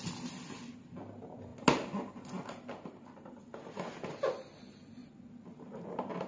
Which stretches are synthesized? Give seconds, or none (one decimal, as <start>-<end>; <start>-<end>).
none